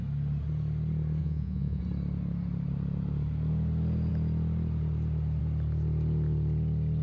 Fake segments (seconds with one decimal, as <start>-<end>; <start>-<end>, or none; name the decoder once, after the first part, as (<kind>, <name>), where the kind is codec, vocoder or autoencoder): 1.2-1.8 (vocoder, Vocos)